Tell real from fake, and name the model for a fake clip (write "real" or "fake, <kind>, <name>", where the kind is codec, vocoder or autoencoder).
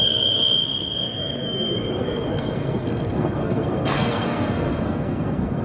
fake, codec, SNAC